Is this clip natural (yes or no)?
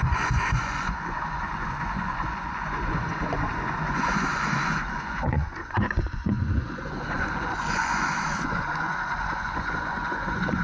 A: no